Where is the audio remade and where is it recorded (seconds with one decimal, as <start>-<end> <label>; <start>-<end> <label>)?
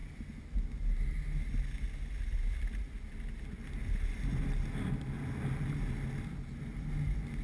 0.0-7.4 recorded